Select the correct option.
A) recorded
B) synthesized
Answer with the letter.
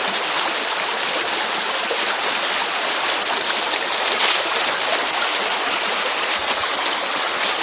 A